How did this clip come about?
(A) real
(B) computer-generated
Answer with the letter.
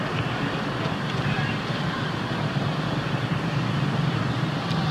B